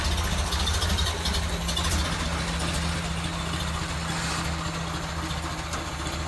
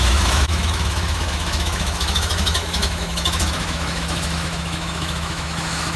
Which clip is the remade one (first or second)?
second